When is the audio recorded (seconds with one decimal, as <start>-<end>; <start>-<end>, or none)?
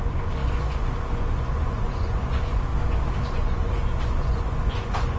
2.7-3.3